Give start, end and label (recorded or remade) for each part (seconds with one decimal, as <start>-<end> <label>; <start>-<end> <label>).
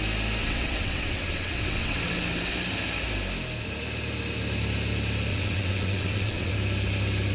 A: 0.0-0.4 recorded; 0.4-2.5 remade; 2.5-5.3 recorded; 5.3-6.5 remade; 6.5-7.3 recorded